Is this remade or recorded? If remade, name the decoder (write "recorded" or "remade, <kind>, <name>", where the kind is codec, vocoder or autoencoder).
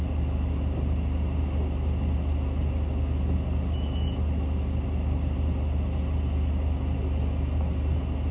recorded